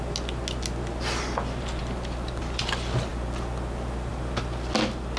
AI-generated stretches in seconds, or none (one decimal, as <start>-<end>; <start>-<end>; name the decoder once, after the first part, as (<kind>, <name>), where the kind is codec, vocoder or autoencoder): none